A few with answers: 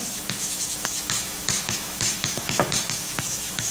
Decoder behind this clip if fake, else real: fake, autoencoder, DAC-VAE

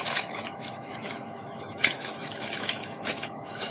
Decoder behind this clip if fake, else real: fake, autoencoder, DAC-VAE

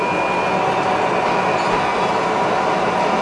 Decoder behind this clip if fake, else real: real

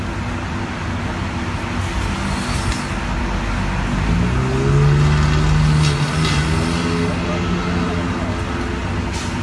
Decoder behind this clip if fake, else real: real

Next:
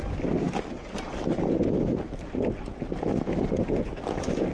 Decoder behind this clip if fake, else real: real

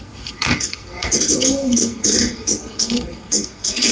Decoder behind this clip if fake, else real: fake, codec, SNAC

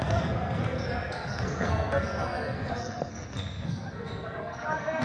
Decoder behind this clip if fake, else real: fake, codec, SNAC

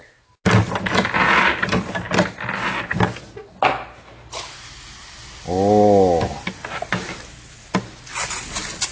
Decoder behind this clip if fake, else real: real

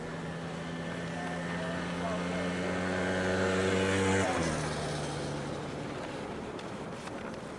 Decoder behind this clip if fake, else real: real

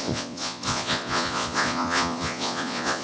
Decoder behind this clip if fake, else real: fake, vocoder, Vocos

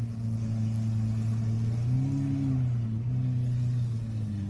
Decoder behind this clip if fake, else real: real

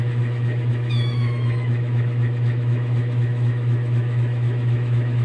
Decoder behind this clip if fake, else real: fake, autoencoder, DAC-VAE